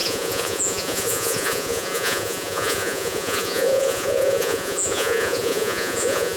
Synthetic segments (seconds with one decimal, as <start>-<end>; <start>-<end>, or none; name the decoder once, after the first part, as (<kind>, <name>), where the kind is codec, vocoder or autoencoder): 0.0-6.4 (vocoder, Vocos)